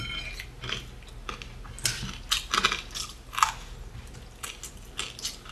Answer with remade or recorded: recorded